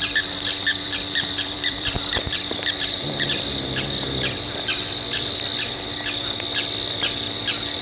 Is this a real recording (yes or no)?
no